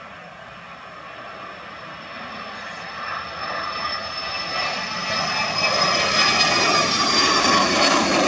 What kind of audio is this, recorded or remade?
recorded